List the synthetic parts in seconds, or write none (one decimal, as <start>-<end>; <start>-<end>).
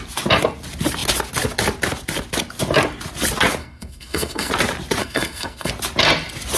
3.6-4.5; 5.0-5.7